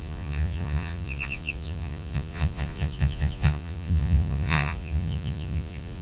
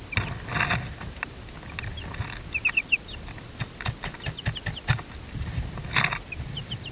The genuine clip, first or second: second